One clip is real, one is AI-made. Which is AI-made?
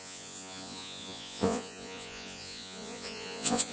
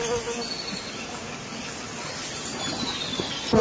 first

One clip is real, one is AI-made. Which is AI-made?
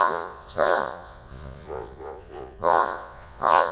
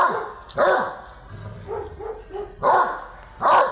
first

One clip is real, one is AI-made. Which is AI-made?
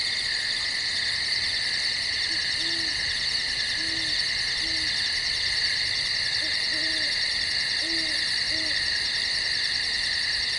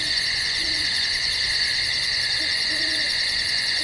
second